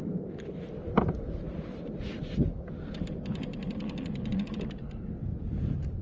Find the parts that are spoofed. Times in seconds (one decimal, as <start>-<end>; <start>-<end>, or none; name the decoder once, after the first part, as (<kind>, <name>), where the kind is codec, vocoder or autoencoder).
0.8-3.7 (vocoder, BigVGAN v2)